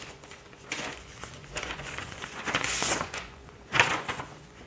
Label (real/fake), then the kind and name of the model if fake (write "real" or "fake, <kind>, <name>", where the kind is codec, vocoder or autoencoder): fake, vocoder, Vocos